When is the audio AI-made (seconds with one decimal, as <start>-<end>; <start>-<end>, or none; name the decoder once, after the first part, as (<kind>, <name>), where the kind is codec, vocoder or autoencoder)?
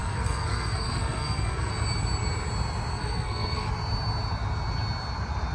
0.0-1.7 (codec, SNAC); 2.9-3.7